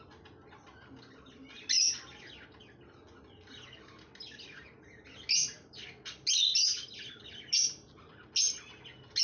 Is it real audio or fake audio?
real